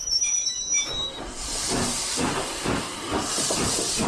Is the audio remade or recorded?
remade